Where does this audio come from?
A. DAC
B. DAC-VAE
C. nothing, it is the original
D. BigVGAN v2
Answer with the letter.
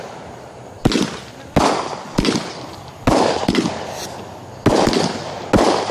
C